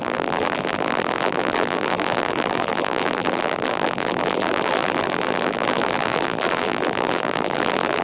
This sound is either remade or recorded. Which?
remade